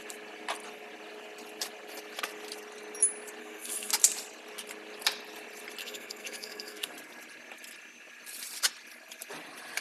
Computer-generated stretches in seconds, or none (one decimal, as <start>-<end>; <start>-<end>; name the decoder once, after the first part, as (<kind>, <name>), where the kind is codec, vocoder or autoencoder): 3.4-3.9 (codec, SNAC); 5.8-6.9